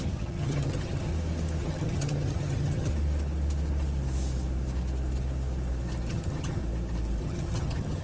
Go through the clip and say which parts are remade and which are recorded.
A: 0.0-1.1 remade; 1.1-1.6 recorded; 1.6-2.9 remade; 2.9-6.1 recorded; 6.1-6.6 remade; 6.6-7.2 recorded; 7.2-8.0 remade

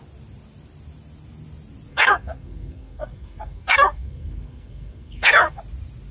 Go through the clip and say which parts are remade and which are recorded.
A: 0.0-1.9 recorded; 1.9-5.6 remade; 5.6-6.1 recorded